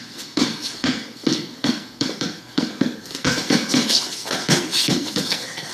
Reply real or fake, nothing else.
fake